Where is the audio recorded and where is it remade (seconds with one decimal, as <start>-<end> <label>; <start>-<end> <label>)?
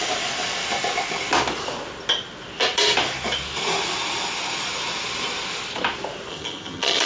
0.0-6.3 recorded; 6.3-7.1 remade